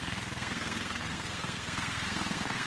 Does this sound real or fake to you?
fake